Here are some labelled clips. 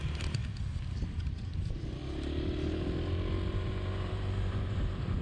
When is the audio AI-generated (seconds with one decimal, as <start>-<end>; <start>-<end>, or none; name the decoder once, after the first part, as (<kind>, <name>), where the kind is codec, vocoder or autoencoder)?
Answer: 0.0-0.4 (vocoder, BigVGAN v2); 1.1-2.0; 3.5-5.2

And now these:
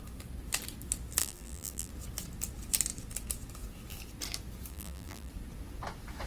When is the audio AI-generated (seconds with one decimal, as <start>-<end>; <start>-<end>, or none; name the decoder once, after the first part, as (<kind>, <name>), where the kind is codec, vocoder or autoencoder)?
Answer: 1.2-1.9 (vocoder, BigVGAN v2); 4.7-5.3

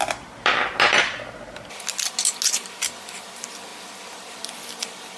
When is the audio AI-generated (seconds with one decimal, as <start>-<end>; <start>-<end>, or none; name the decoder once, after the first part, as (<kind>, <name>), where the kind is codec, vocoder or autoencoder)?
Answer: none

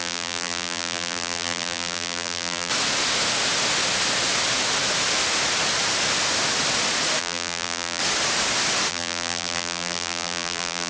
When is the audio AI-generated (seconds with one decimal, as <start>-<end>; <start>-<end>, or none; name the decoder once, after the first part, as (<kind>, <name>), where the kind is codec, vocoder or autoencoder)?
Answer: 0.0-2.7 (vocoder, BigVGAN v2); 7.2-8.0; 8.9-10.9

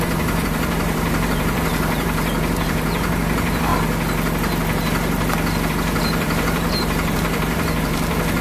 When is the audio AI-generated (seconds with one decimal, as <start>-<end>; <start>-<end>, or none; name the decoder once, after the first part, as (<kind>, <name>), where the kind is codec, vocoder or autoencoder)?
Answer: 0.0-3.7 (vocoder, BigVGAN v2); 5.7-8.4

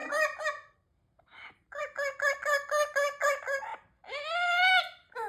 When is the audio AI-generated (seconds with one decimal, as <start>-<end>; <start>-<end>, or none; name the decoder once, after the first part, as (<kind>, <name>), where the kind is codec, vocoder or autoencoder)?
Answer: 0.0-1.8 (vocoder, BigVGAN v2)

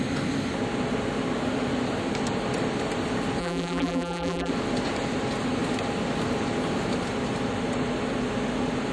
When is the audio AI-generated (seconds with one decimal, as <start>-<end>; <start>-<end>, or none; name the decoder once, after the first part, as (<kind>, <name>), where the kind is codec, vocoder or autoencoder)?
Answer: 3.4-4.5 (vocoder, BigVGAN v2)

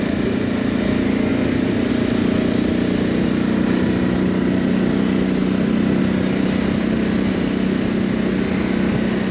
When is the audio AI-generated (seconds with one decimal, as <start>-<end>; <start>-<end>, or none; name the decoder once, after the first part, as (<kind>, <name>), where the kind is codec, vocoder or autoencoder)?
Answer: 1.3-1.9 (vocoder, BigVGAN v2)